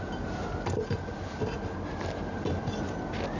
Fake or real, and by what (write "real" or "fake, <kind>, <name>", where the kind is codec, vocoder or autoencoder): real